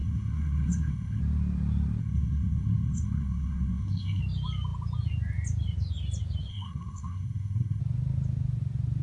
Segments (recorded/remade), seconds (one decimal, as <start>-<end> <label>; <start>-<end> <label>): 0.0-1.2 remade; 1.2-2.0 recorded; 2.0-4.2 remade; 4.2-6.5 recorded; 6.5-7.8 remade; 7.8-9.0 recorded